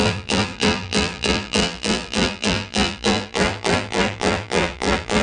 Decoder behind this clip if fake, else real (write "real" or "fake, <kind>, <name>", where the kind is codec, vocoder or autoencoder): fake, vocoder, BigVGAN v2